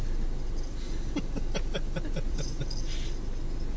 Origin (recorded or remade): recorded